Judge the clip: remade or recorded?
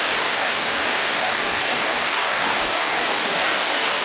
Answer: remade